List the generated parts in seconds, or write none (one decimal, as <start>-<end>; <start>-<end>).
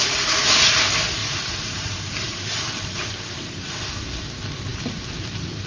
1.2-3.9; 4.7-5.7